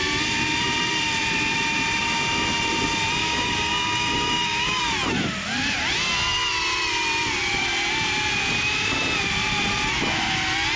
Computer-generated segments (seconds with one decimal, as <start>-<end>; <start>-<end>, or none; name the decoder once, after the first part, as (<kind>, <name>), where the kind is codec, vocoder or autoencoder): 3.2-4.8 (codec, DAC)